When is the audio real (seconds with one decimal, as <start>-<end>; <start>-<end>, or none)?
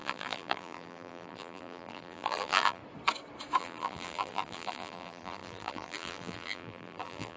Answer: 2.8-3.6